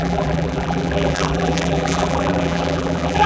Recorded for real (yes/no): no